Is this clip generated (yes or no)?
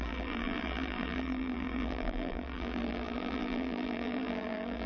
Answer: yes